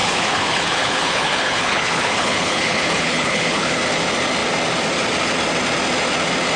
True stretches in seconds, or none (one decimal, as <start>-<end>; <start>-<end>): 3.8-6.6